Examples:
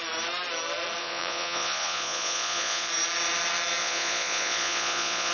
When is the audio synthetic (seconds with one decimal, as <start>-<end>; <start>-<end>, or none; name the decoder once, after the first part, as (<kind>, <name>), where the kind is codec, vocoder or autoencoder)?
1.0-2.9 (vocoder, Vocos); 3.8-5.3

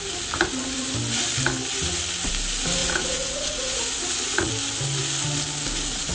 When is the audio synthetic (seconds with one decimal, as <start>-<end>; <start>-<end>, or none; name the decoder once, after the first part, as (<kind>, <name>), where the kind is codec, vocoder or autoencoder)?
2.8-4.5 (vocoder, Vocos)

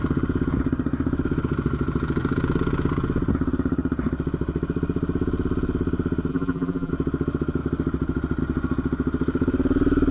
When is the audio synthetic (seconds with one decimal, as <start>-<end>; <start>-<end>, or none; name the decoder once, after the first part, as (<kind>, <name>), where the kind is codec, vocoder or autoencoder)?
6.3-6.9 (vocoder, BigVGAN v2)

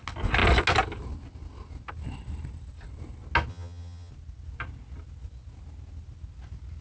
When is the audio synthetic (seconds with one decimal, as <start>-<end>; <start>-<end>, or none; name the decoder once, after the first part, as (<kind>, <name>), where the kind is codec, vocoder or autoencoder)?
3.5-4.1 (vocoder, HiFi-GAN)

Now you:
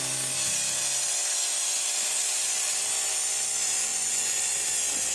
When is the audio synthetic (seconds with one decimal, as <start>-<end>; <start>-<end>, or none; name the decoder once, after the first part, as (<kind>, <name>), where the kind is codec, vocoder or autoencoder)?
3.9-4.4 (vocoder, Vocos)